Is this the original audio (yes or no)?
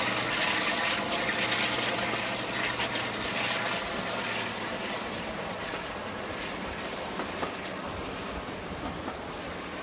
yes